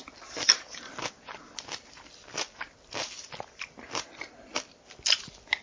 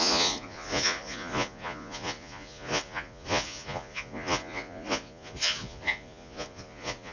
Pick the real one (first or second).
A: first